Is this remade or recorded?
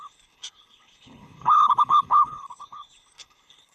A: remade